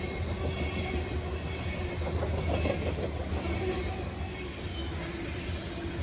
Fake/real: real